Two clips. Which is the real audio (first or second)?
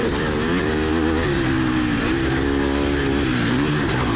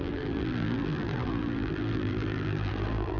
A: first